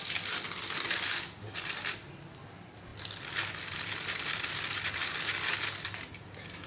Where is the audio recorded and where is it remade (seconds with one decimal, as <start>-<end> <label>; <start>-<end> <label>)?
0.0-6.7 recorded